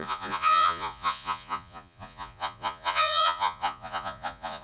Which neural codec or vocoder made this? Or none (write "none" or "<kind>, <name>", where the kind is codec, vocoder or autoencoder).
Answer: vocoder, Vocos